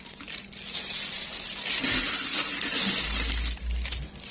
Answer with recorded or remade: recorded